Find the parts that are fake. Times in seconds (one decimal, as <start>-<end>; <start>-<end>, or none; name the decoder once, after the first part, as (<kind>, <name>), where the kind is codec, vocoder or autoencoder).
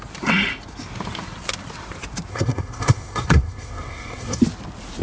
2.3-4.4 (codec, SNAC)